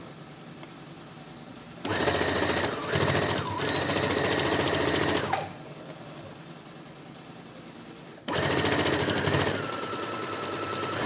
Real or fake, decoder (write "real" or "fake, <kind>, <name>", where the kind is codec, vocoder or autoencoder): real